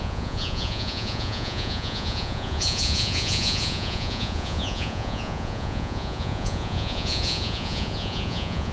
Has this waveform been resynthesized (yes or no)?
yes